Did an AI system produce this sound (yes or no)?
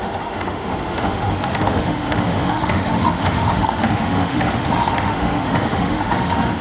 yes